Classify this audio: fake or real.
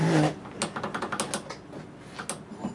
real